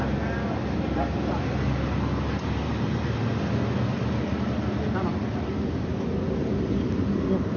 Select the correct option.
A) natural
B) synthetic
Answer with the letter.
A